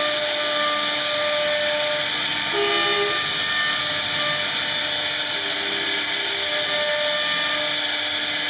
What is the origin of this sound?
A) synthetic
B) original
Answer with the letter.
B